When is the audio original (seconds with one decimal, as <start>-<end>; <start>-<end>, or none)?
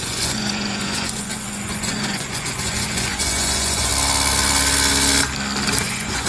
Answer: 3.9-5.8